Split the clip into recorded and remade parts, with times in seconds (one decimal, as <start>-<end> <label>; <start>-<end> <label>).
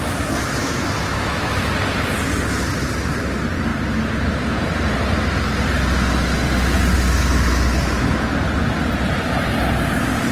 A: 0.0-0.6 recorded; 0.6-1.6 remade; 1.6-10.3 recorded